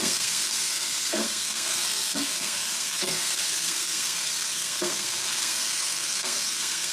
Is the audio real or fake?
fake